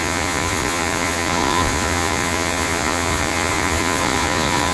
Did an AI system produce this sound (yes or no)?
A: yes